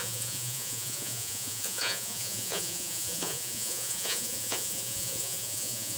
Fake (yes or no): yes